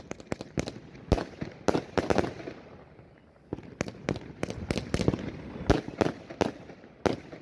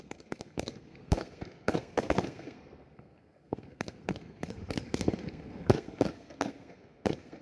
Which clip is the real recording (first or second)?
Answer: first